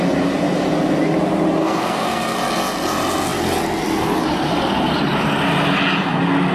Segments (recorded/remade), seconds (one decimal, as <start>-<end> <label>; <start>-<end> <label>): 0.0-1.6 recorded; 1.6-2.4 remade; 2.4-6.5 recorded